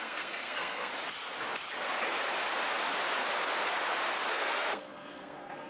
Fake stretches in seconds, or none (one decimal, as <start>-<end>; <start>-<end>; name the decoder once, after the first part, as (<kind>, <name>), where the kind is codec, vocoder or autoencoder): 0.0-0.9 (codec, SNAC); 4.3-5.7